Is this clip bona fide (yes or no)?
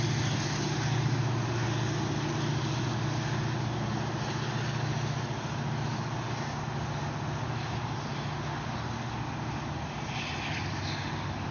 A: yes